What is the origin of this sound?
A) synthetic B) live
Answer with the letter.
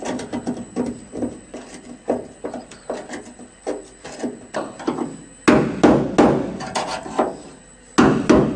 B